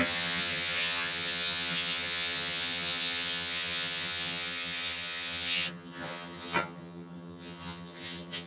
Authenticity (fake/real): fake